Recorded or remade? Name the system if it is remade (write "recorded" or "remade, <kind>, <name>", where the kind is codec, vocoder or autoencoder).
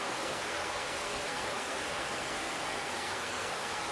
remade, codec, SNAC